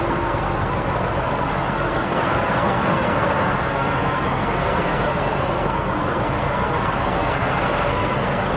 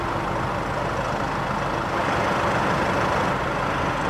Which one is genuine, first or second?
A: second